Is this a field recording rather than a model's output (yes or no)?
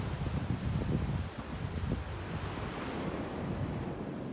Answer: yes